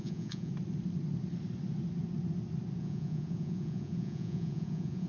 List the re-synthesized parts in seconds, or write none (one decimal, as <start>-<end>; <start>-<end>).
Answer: 0.0-0.5; 2.8-5.1